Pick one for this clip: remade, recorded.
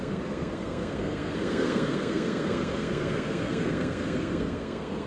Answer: remade